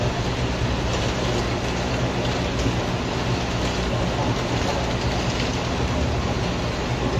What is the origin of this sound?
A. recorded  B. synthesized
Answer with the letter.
A